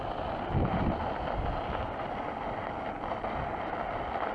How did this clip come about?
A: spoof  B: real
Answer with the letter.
B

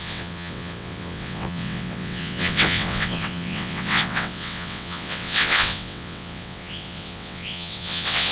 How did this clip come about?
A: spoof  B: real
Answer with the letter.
A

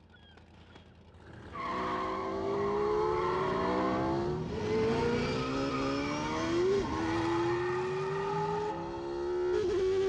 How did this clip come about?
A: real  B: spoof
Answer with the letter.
A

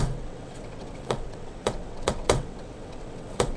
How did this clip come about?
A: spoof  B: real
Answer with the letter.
A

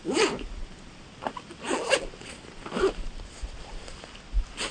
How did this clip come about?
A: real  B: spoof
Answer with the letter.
A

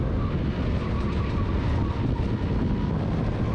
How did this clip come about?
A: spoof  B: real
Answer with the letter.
B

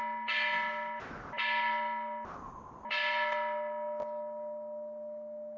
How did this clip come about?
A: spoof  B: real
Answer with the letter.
B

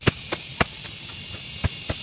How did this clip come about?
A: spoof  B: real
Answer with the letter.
B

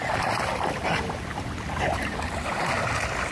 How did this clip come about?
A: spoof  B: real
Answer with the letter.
B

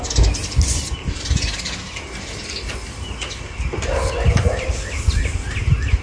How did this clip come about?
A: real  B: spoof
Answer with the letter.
A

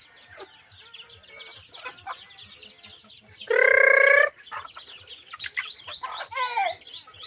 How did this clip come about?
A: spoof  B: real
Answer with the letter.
B